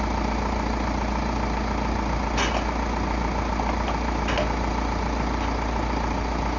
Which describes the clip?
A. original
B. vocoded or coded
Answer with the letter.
A